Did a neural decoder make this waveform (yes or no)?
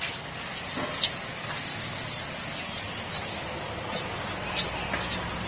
no